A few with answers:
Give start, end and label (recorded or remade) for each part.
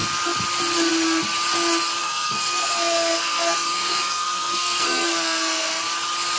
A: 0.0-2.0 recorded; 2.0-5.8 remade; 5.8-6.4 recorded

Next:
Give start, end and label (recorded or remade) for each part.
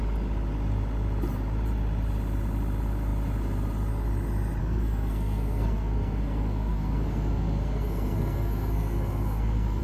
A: 0.0-4.6 recorded; 4.6-9.8 remade